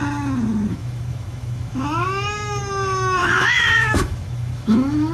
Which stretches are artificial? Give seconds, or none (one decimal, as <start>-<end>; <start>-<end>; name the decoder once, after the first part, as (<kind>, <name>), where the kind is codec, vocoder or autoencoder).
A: 0.7-2.6 (autoencoder, DAC-VAE); 3.2-5.1